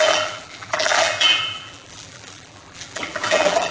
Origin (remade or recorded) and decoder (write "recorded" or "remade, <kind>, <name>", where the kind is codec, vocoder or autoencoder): remade, vocoder, BigVGAN v2